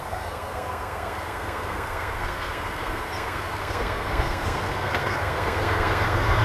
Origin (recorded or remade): remade